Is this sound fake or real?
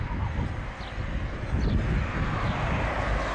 real